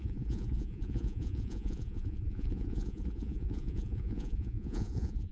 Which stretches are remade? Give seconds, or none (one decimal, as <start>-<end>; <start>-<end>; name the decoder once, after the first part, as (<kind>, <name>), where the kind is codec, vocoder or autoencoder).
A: 0.0-5.3 (vocoder, Vocos)